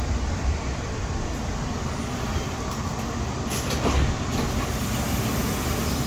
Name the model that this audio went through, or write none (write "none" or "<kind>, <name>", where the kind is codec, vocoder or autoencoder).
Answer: none